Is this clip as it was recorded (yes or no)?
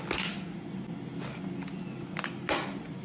yes